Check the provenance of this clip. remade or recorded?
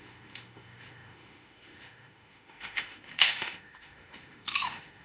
remade